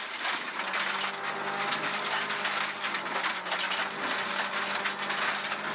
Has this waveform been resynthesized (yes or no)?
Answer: no